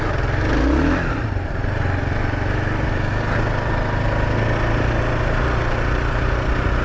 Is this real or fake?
real